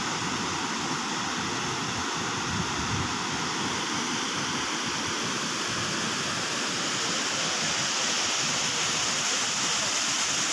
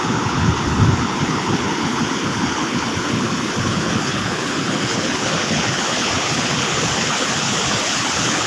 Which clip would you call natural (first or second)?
first